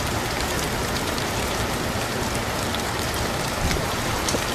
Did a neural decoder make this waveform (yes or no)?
yes